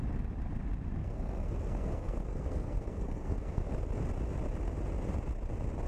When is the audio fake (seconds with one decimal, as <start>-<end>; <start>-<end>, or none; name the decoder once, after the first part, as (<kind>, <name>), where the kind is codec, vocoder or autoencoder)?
1.0-3.6 (codec, SNAC)

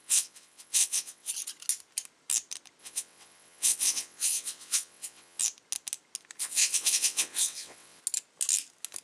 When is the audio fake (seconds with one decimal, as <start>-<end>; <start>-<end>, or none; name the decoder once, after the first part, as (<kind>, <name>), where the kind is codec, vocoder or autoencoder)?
0.0-1.3 (vocoder, WaveNeXt); 2.8-5.4; 6.4-8.0

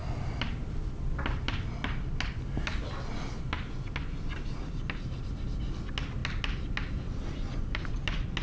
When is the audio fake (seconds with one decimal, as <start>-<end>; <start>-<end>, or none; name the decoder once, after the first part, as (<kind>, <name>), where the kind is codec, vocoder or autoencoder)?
none

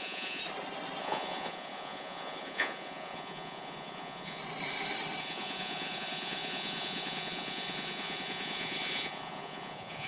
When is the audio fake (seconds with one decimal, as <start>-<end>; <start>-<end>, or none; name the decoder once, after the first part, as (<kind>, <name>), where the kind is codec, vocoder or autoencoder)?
0.0-0.4 (vocoder, Vocos); 1.0-4.4; 5.2-10.1

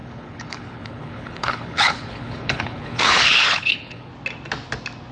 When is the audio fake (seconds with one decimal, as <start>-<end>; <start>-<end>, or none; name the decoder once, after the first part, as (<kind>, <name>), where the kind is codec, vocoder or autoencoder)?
0.0-4.1 (codec, HILCodec)

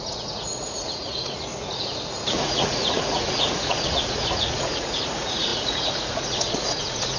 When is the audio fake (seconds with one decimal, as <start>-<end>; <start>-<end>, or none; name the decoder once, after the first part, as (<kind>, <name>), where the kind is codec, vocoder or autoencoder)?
0.0-7.2 (vocoder, Vocos)

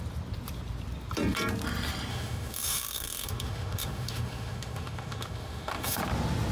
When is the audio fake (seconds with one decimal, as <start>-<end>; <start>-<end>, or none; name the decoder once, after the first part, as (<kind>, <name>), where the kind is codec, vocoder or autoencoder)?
2.1-6.0 (autoencoder, DAC-VAE)